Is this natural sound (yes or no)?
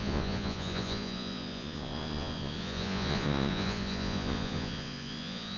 no